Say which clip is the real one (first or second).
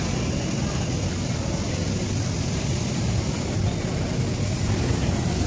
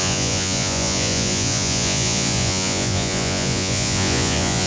first